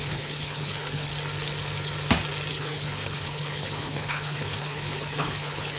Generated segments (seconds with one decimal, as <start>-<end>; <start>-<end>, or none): 0.0-1.1; 2.5-5.8